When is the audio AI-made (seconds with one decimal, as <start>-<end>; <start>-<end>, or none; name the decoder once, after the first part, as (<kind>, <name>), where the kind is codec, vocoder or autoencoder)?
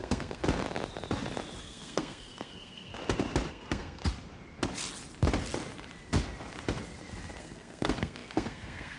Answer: 0.0-0.4 (codec, SNAC); 1.6-2.9; 3.5-4.0; 7.4-9.0